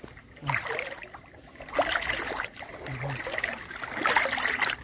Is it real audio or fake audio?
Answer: real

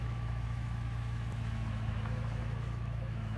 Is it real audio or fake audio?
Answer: fake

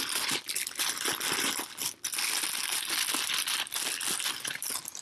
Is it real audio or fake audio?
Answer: real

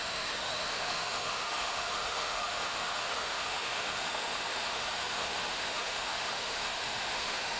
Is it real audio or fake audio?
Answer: fake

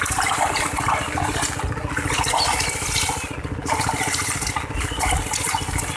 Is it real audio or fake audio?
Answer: real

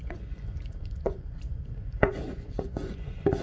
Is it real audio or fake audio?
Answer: fake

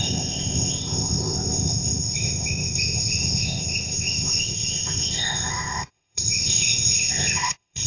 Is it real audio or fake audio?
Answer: fake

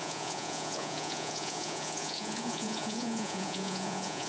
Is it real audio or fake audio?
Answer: fake